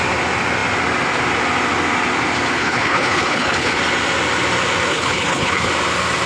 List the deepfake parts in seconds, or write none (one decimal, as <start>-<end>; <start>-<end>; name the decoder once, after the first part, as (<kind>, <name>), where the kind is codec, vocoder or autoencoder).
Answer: 2.6-3.8 (codec, HILCodec); 4.9-5.7